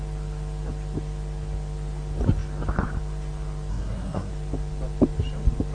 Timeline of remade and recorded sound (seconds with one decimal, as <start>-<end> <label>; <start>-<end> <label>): 0.0-3.7 recorded; 3.7-4.3 remade; 4.3-5.7 recorded